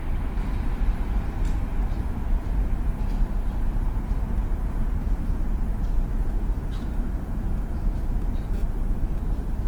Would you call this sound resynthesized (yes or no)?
yes